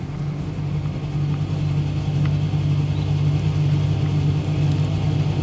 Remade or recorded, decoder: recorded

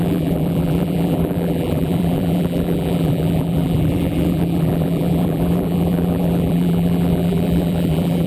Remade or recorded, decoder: remade, vocoder, BigVGAN v2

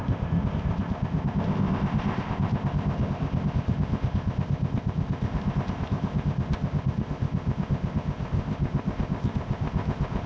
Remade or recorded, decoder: remade, codec, ZipCodec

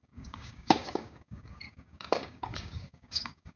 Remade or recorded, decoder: remade, codec, DAC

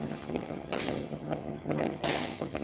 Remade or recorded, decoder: remade, vocoder, HiFi-GAN